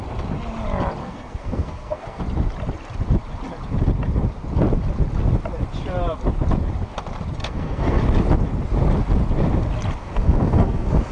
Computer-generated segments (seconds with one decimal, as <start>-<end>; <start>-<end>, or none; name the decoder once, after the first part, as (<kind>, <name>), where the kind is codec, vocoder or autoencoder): 1.0-2.2 (codec, SNAC); 7.4-8.0; 10.0-11.1